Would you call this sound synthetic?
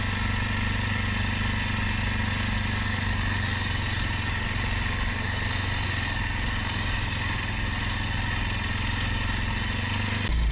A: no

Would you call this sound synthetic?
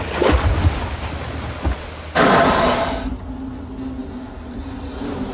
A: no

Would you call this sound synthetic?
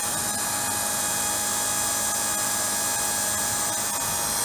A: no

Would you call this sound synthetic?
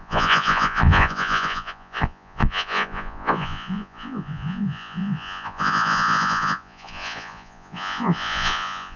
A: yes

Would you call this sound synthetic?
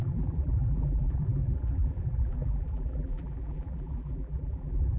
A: yes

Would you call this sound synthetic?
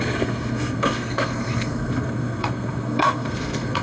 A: yes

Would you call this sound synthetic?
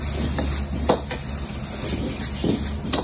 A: no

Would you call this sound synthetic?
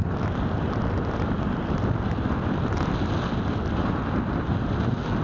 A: no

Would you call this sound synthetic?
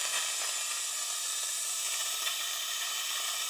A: yes